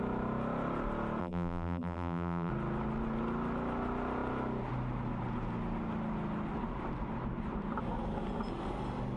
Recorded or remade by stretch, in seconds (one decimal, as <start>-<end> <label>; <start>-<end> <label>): 0.0-1.2 recorded; 1.2-2.5 remade; 2.5-9.2 recorded